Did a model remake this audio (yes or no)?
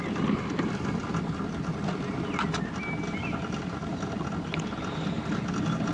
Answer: no